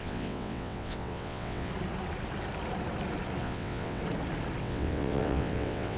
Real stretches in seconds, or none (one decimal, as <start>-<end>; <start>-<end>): 1.7-3.4; 4.0-4.6